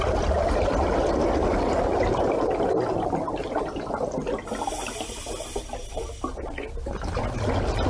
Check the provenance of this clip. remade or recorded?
recorded